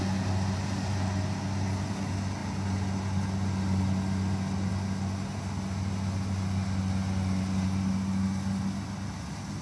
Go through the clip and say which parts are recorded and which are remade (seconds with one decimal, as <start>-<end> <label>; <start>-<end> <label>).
0.0-9.6 recorded